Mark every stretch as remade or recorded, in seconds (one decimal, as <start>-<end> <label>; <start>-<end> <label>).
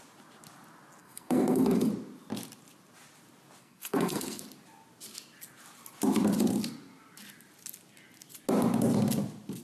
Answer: 0.0-1.0 recorded; 1.0-1.9 remade; 1.9-3.6 recorded; 3.6-4.4 remade; 4.4-9.6 recorded